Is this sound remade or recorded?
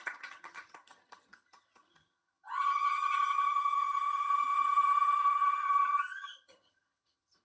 remade